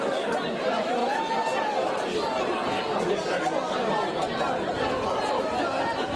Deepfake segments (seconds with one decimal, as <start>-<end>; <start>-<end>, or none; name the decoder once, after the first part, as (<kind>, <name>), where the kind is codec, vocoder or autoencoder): none